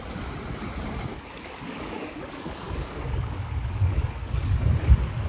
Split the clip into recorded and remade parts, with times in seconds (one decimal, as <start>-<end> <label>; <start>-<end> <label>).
0.0-1.1 recorded; 1.1-4.3 remade; 4.3-5.3 recorded